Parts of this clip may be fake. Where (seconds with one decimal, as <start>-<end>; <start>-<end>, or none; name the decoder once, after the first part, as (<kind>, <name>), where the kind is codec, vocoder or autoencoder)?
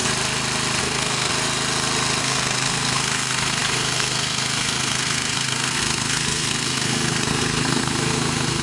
0.8-1.3 (codec, SNAC); 2.2-8.6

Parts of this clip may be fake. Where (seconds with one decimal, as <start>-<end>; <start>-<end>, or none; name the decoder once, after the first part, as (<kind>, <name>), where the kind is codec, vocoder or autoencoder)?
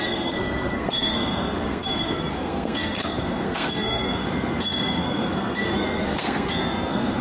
0.0-7.2 (codec, SNAC)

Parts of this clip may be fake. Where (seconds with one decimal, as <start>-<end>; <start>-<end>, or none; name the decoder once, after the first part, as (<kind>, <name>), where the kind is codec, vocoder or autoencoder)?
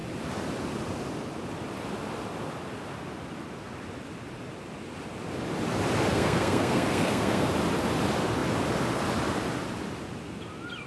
6.1-7.5 (codec, SNAC)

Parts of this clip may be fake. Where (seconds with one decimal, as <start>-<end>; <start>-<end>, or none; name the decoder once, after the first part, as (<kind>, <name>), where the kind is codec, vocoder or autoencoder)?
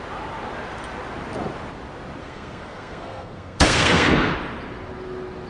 2.2-4.3 (codec, SNAC)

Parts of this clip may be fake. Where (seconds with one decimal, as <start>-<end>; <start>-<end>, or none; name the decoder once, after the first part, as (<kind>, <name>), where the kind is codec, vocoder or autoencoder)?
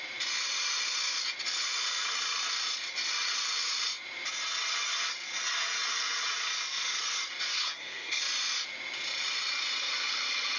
7.5-8.2 (codec, SNAC)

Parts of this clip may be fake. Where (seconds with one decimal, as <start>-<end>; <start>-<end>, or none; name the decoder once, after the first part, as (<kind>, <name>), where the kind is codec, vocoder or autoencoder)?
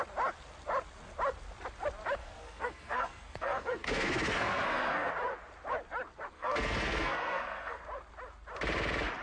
2.2-5.1 (codec, SNAC); 6.3-7.8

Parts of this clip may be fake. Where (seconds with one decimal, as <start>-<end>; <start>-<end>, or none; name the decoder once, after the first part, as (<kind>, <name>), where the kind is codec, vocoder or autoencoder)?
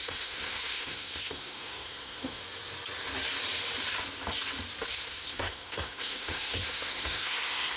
0.0-2.4 (codec, SNAC); 4.9-7.8